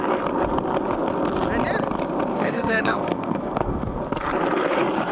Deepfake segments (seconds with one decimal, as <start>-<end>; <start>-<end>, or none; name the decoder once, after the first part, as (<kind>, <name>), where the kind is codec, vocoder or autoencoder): 2.4-4.0 (codec, SNAC)